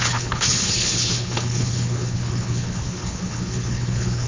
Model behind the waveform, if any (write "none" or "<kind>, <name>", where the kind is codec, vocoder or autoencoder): codec, HILCodec